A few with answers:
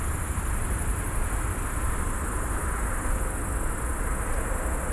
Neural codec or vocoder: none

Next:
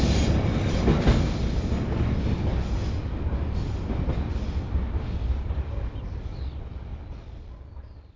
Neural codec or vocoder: none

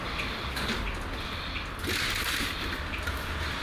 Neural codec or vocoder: none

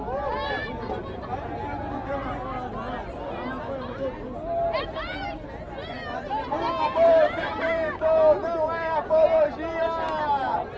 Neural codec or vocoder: none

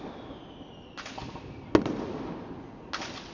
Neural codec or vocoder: none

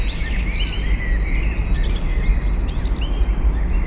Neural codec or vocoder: none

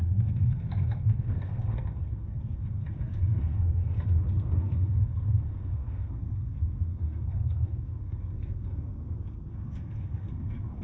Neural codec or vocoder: codec, SNAC